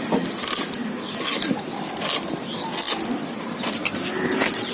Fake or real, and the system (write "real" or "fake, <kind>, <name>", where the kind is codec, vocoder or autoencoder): real